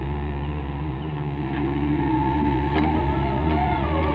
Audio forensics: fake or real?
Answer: fake